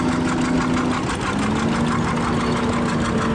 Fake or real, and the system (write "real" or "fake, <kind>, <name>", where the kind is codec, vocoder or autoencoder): real